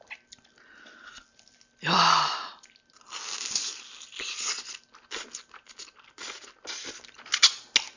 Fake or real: real